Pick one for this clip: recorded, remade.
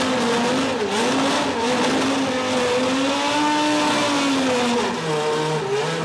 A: recorded